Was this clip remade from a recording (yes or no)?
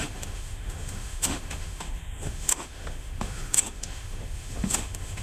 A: yes